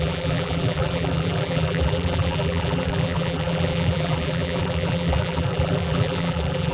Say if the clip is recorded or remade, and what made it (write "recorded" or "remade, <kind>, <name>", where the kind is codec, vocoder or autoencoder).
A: remade, vocoder, BigVGAN v2